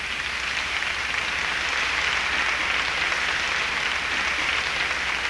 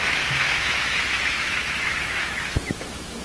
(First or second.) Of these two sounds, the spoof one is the second